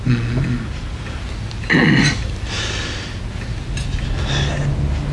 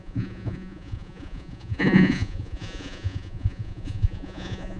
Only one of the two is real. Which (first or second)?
first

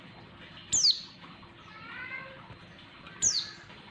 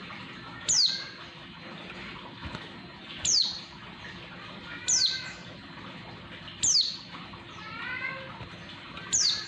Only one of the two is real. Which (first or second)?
first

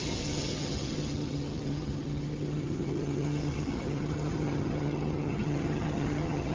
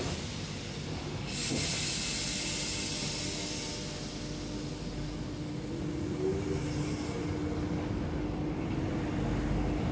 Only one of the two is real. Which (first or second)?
second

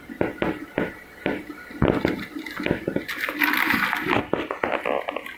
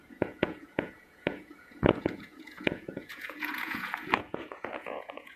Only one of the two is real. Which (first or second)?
first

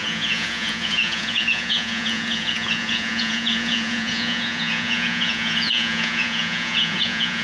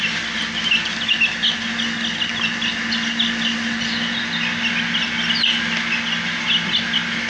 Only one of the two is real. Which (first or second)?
second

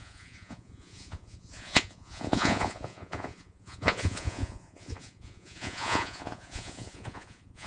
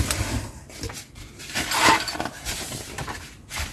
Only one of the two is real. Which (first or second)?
second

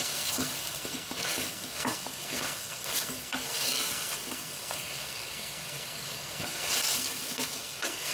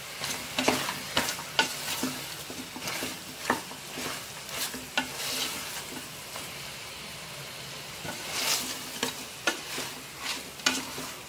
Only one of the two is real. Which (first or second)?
second